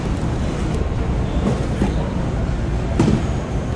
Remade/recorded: recorded